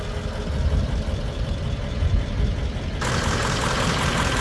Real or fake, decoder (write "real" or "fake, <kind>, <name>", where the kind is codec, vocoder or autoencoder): real